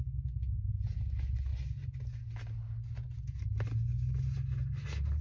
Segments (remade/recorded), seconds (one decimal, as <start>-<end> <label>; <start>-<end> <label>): 0.0-5.2 recorded